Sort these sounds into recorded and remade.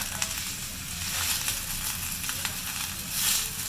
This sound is recorded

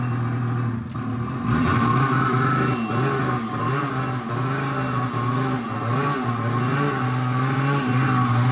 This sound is recorded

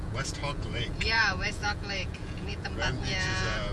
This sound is remade